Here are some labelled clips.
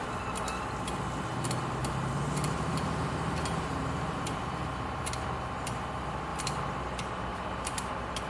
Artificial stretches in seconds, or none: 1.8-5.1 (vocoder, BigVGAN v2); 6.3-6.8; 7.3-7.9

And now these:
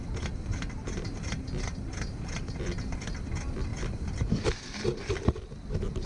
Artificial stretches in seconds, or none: none